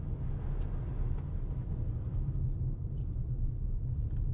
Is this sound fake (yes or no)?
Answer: no